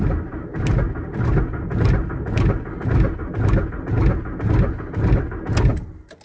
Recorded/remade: recorded